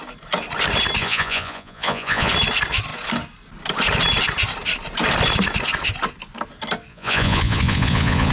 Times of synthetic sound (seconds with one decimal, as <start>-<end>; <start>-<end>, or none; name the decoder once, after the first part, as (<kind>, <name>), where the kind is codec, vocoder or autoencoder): 1.0-2.3 (vocoder, Vocos); 6.9-8.3